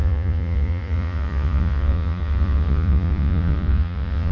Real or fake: fake